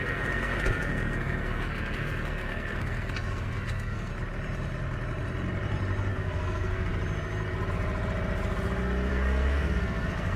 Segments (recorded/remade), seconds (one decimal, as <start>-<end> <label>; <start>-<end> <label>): 0.0-4.1 remade; 4.1-6.1 recorded; 6.1-6.9 remade; 6.9-9.1 recorded; 9.1-10.4 remade